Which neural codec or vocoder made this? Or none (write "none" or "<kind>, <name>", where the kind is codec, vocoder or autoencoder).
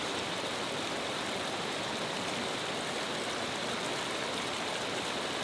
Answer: none